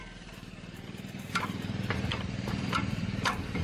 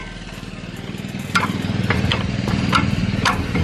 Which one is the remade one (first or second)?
first